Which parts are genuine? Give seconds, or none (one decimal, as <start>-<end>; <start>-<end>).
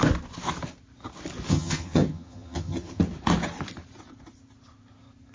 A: 0.0-1.5; 3.0-5.3